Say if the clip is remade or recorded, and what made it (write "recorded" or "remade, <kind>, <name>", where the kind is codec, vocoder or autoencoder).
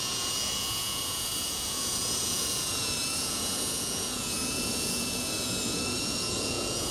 remade, vocoder, Vocos